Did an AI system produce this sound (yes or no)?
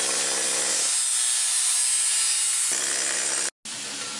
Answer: no